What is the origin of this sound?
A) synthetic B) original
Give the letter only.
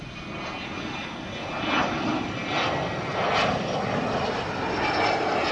B